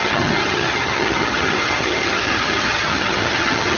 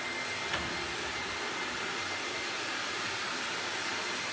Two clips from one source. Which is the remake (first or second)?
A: first